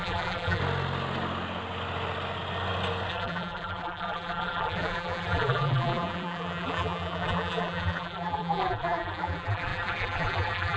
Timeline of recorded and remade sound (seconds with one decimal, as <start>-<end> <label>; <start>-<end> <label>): 0.0-0.6 remade; 0.6-3.1 recorded; 3.1-10.8 remade